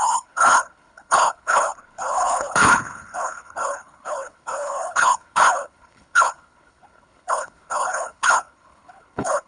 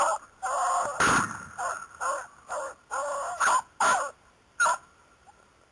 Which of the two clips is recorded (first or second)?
second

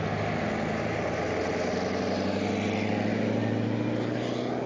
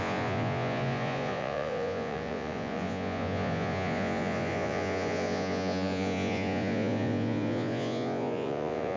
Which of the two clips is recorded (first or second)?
first